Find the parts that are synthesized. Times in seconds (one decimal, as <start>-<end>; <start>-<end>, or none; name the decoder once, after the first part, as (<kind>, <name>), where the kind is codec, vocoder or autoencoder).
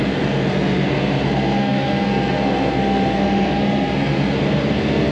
0.0-5.1 (codec, SNAC)